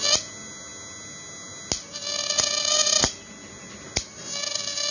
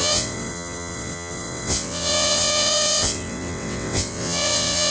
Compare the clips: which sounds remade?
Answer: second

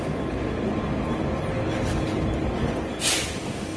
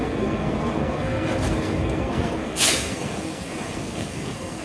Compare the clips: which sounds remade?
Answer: second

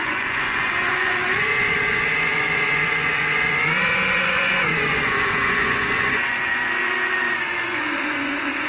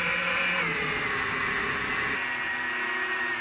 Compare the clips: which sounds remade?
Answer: first